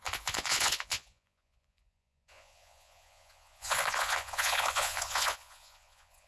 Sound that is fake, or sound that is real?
fake